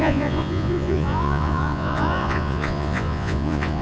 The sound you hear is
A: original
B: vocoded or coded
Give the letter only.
B